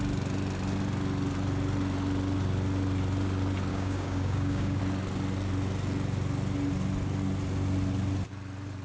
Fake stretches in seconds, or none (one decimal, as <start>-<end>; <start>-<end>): 3.7-4.8